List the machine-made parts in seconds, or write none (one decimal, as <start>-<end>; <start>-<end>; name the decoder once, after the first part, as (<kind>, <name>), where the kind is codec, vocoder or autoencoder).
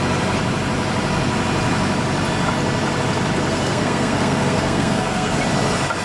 3.5-5.4 (codec, SNAC)